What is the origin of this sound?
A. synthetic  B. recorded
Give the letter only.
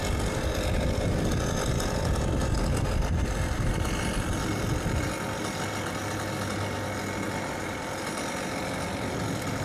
B